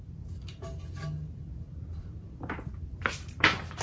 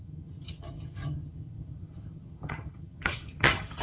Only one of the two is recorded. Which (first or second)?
first